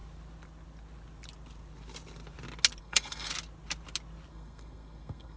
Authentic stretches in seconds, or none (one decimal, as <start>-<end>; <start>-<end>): 0.0-2.8; 3.3-4.3